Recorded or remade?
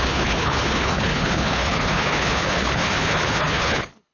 remade